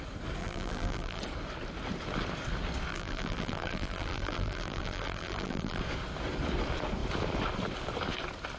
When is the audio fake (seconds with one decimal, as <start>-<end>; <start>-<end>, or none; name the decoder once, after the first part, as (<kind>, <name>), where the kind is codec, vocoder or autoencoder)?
0.4-1.2 (vocoder, BigVGAN v2); 2.9-5.8